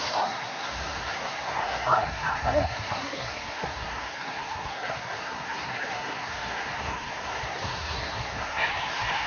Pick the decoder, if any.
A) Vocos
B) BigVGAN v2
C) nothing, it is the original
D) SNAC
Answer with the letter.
D